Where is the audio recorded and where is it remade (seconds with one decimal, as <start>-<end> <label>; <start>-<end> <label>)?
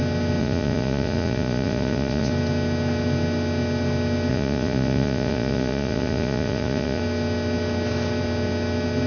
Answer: 0.0-0.4 recorded; 0.4-2.3 remade; 2.3-4.3 recorded; 4.3-7.0 remade; 7.0-9.1 recorded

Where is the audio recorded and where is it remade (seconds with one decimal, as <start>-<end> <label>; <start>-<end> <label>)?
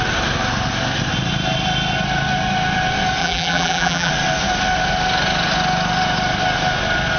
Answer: 0.0-3.2 recorded; 3.2-4.1 remade; 4.1-7.2 recorded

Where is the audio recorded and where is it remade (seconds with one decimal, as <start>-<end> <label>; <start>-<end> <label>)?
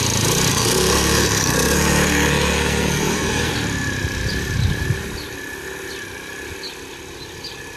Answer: 0.0-0.5 recorded; 0.5-3.5 remade; 3.5-7.8 recorded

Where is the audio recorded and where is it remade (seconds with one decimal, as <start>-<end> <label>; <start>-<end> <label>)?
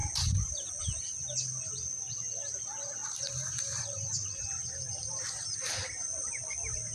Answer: 0.0-0.8 remade; 0.8-3.0 recorded; 3.0-5.5 remade; 5.5-6.9 recorded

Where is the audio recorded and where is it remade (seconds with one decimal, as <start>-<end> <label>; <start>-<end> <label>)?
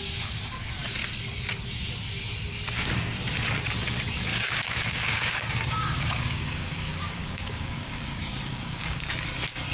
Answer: 0.0-4.3 recorded; 4.3-9.1 remade; 9.1-9.7 recorded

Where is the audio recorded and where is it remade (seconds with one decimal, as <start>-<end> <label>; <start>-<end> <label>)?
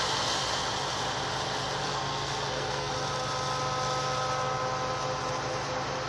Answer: 0.0-1.8 recorded; 1.8-2.9 remade; 2.9-6.1 recorded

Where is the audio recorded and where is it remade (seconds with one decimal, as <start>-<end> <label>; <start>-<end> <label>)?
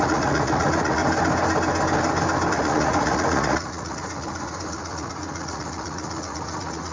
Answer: 0.0-1.0 remade; 1.0-2.5 recorded; 2.5-6.9 remade